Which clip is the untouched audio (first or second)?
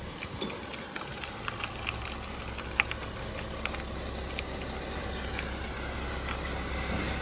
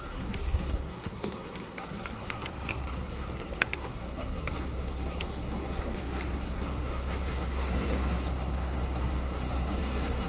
first